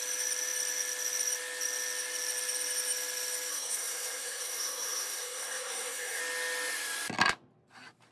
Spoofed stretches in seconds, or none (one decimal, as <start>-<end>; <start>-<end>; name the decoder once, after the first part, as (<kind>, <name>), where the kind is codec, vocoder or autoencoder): 3.5-6.2 (codec, SNAC)